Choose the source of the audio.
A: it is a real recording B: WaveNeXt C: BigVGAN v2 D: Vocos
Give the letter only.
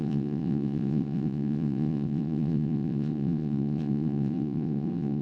B